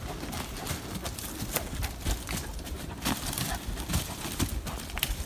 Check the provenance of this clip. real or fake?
real